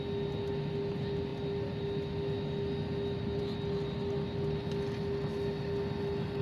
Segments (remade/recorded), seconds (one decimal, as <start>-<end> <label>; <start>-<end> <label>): 0.0-6.4 recorded